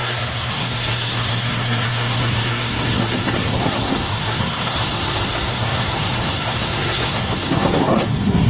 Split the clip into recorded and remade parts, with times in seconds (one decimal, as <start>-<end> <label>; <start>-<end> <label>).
0.0-8.5 remade